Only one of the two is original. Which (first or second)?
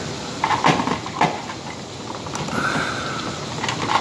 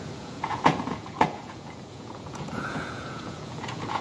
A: first